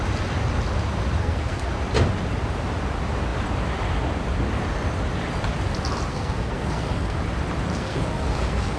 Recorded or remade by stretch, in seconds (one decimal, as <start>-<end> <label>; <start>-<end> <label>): 0.0-1.2 recorded; 1.2-1.7 remade; 1.7-6.1 recorded; 6.1-7.2 remade; 7.2-7.7 recorded; 7.7-8.8 remade